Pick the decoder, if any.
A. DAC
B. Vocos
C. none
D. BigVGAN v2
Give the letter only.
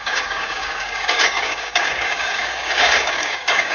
A